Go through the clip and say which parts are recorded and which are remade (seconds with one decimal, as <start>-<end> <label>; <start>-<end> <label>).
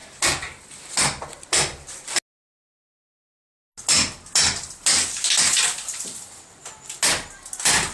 0.0-7.9 recorded